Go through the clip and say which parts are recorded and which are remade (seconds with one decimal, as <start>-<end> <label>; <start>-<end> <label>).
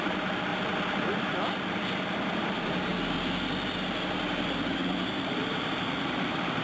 0.0-0.5 remade; 0.5-2.3 recorded; 2.3-2.9 remade; 2.9-4.7 recorded; 4.7-6.6 remade